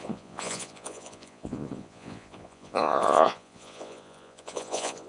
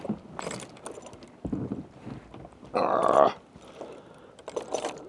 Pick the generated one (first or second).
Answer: first